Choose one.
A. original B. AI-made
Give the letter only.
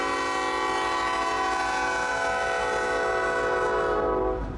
A